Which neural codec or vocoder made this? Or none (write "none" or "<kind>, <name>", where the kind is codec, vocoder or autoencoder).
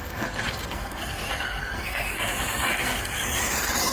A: codec, SNAC